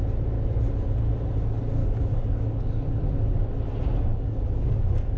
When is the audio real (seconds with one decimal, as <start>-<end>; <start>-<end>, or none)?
0.0-1.8; 3.0-4.1